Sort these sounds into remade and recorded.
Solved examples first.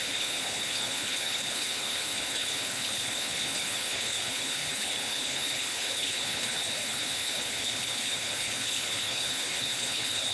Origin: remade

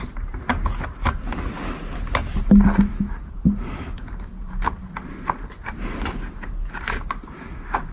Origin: recorded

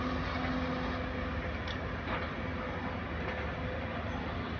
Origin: recorded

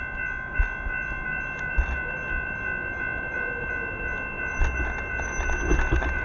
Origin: recorded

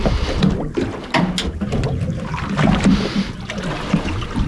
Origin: recorded